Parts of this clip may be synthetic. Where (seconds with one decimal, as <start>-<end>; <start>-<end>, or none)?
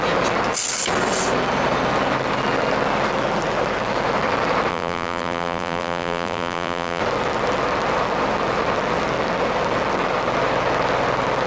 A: 4.7-7.0